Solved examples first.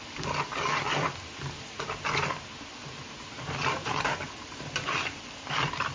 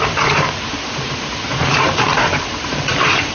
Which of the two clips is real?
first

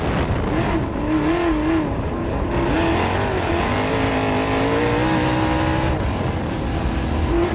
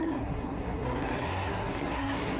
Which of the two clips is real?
first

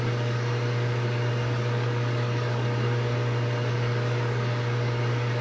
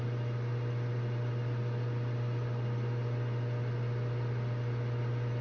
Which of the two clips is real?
second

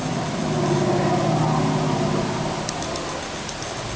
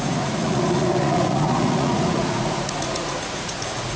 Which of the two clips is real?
first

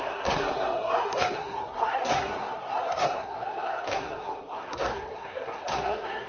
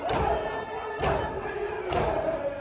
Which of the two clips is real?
second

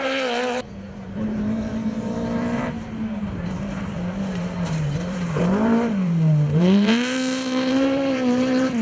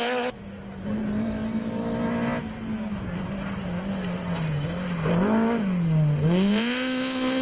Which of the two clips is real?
second